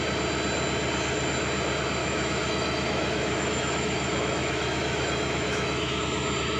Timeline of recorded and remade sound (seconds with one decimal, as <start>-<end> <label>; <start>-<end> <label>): 0.0-2.0 recorded; 2.0-6.0 remade; 6.0-6.6 recorded